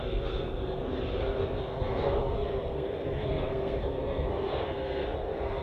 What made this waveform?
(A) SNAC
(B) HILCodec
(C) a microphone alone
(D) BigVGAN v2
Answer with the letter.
A